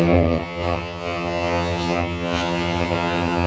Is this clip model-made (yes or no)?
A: yes